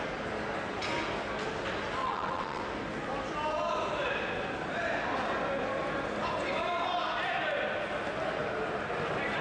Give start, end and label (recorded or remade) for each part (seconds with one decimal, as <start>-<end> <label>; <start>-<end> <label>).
0.0-2.0 recorded; 2.0-2.6 remade; 2.6-9.4 recorded